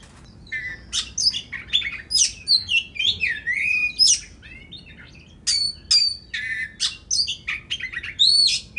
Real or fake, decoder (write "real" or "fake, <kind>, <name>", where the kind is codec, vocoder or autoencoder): real